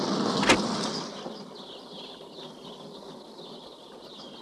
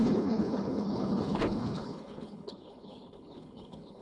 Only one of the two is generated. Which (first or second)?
second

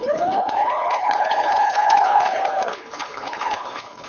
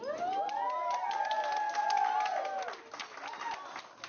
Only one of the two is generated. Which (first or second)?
first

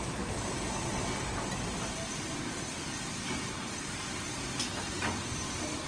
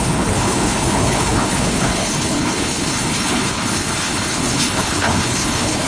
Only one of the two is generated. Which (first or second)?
second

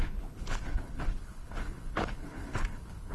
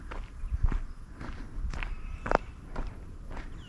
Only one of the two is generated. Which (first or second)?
first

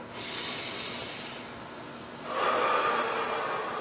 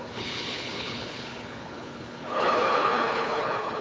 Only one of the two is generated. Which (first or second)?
second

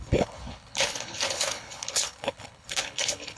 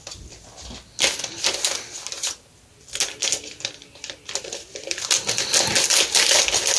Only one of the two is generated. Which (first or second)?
first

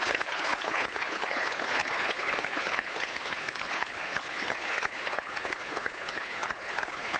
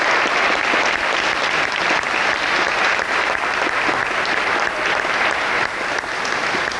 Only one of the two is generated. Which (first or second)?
first